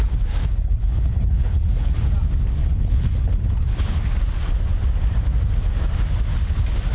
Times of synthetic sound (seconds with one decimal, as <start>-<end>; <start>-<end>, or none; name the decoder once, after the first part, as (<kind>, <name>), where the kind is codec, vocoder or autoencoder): 0.4-2.1 (codec, HILCodec); 2.6-4.0